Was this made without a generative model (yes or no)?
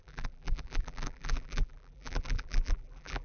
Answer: no